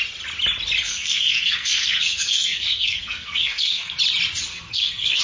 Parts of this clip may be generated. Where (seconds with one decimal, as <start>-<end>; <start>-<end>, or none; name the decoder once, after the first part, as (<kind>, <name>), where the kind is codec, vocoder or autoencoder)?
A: 0.9-4.0 (codec, SNAC); 4.5-5.2